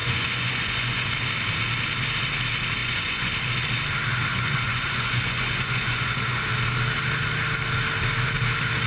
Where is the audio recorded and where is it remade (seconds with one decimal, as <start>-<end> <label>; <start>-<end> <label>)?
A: 0.0-1.1 remade; 1.1-2.8 recorded; 2.8-3.3 remade; 3.3-4.3 recorded; 4.3-6.4 remade; 6.4-8.9 recorded